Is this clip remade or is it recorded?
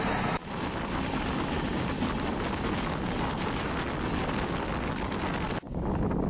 recorded